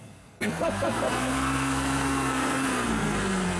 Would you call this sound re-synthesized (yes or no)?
yes